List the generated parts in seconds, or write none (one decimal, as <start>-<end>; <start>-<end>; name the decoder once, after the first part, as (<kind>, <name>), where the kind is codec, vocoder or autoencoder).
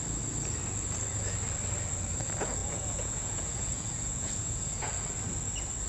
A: 2.6-4.9 (vocoder, Vocos)